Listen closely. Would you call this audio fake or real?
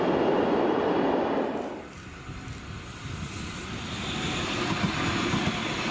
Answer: real